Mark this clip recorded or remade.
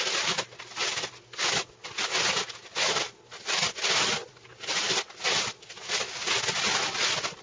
recorded